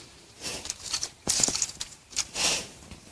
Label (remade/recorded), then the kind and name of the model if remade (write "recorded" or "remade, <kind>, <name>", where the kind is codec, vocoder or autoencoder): remade, vocoder, BigVGAN v2